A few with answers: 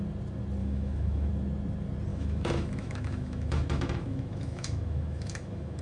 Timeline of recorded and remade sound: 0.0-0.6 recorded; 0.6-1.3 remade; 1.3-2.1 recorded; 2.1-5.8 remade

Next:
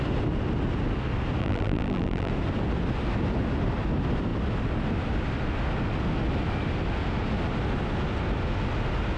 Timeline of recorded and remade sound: 0.0-1.4 recorded; 1.4-2.3 remade; 2.3-9.2 recorded

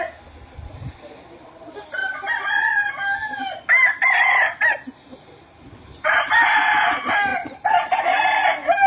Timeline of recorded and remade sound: 0.0-2.0 recorded; 2.0-2.9 remade; 2.9-5.1 recorded; 5.1-6.3 remade; 6.3-8.9 recorded

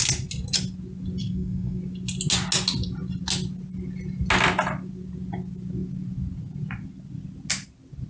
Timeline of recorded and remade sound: 0.0-1.2 recorded; 1.2-1.8 remade; 1.8-8.1 recorded

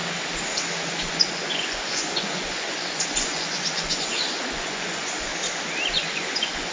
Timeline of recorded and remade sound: 0.0-1.0 recorded; 1.0-5.3 remade; 5.3-5.9 recorded; 5.9-6.7 remade

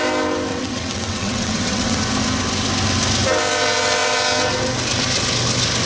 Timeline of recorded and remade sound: 0.0-0.5 recorded; 0.5-2.0 remade; 2.0-5.9 recorded